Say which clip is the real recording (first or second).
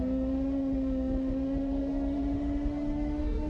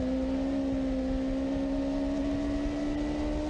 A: second